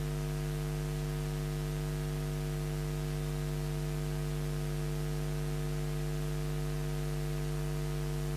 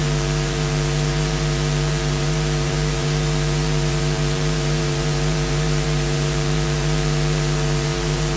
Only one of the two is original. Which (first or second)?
first